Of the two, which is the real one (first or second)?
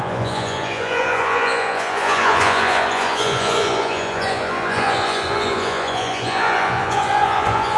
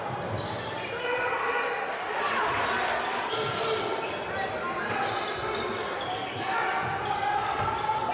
second